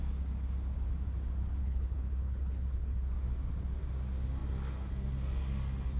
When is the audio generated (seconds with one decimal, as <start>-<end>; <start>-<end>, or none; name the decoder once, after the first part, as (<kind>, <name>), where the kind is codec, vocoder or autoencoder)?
1.6-3.1 (codec, HILCodec)